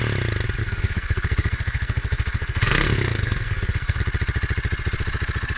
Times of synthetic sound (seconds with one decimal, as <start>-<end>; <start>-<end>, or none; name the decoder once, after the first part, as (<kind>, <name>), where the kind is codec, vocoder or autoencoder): 0.6-4.0 (codec, SNAC)

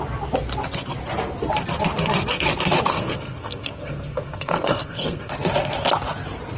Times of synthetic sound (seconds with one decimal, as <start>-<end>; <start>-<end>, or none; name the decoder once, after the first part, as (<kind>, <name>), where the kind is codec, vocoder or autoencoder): 2.9-5.3 (codec, SNAC)

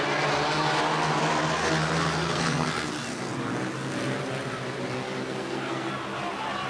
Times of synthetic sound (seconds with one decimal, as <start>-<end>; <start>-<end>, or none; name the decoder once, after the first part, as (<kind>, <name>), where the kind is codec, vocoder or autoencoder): 2.2-2.9 (codec, SNAC); 5.2-5.9

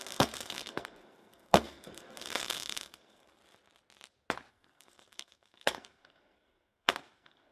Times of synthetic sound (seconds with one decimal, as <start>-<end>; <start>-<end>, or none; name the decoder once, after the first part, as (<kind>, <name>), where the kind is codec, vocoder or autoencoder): 0.0-3.4 (codec, SNAC); 4.5-7.5